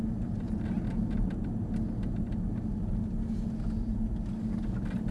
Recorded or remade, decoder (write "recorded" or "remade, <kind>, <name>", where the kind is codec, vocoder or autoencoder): recorded